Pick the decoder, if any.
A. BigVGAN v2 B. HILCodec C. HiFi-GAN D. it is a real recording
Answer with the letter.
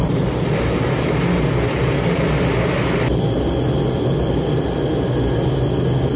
D